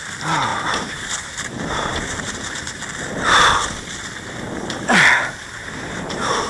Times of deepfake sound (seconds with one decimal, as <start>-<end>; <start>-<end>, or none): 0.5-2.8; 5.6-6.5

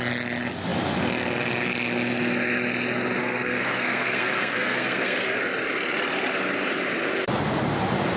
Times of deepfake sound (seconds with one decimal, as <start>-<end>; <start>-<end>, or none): 3.2-5.4

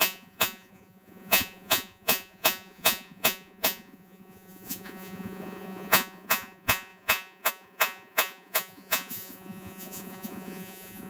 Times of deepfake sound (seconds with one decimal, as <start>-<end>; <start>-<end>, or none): 0.0-11.1

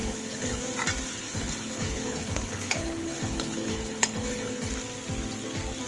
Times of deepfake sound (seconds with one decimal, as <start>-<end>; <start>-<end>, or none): 0.0-0.6; 1.2-4.7